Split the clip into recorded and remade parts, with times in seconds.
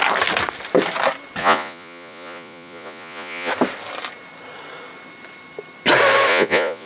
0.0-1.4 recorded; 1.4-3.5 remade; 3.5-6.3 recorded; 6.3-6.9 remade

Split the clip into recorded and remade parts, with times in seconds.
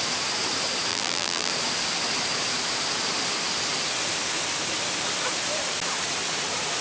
0.0-0.9 recorded; 0.9-1.5 remade; 1.5-6.8 recorded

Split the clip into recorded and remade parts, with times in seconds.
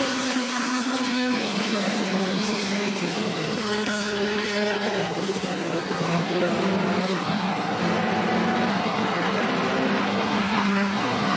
0.0-6.5 remade; 6.5-7.0 recorded; 7.0-7.8 remade; 7.8-8.7 recorded; 8.7-9.4 remade; 9.4-10.0 recorded; 10.0-11.4 remade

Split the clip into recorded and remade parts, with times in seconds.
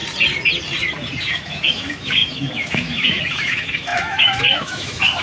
0.0-1.2 recorded; 1.2-5.2 remade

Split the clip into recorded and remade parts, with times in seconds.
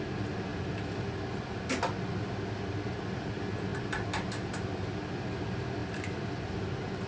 0.0-7.1 recorded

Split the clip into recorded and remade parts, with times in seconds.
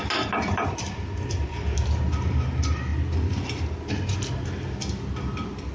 0.0-5.7 recorded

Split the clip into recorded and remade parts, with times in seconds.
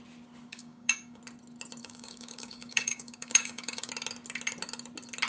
0.0-0.5 recorded; 0.5-1.2 remade; 1.2-1.8 recorded; 1.8-3.9 remade; 3.9-5.3 recorded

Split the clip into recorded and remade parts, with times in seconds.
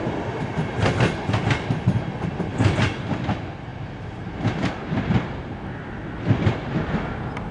0.0-7.5 recorded